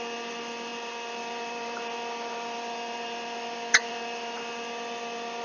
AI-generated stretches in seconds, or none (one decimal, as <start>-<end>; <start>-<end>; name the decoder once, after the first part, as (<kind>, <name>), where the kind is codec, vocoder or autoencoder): 0.0-5.4 (vocoder, BigVGAN v2)